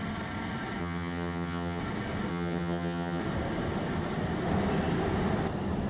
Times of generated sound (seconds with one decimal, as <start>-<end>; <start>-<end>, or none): 0.8-1.8; 2.3-3.2